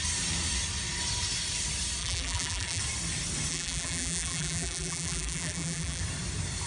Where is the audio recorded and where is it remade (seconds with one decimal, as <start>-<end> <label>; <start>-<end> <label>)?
0.0-2.0 recorded; 2.0-2.8 remade; 2.8-3.5 recorded; 3.5-6.0 remade; 6.0-6.7 recorded